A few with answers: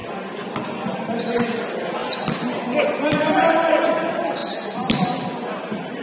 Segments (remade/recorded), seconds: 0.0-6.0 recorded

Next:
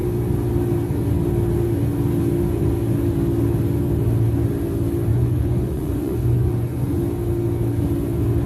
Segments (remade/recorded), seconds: 0.0-5.1 recorded; 5.1-7.0 remade; 7.0-8.5 recorded

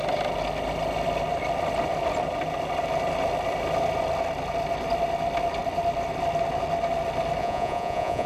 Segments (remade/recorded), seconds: 0.0-7.4 recorded; 7.4-8.3 remade

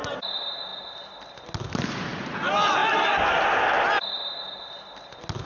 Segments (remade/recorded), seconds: 0.0-5.5 recorded

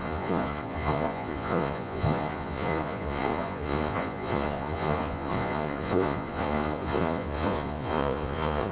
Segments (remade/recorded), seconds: 0.0-8.7 remade

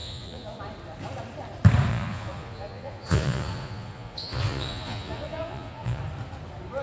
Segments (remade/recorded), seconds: 0.0-0.6 remade; 0.6-1.9 recorded; 1.9-6.0 remade; 6.0-6.8 recorded

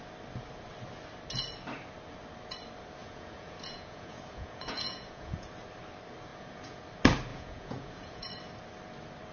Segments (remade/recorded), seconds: 0.0-3.0 recorded; 3.0-5.5 remade; 5.5-6.3 recorded; 6.3-6.8 remade; 6.8-7.3 recorded; 7.3-8.3 remade; 8.3-9.3 recorded

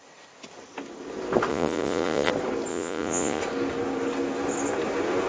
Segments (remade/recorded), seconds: 0.0-1.5 recorded; 1.5-2.3 remade; 2.3-2.7 recorded; 2.7-3.4 remade; 3.4-5.3 recorded